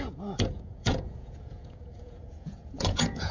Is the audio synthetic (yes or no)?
yes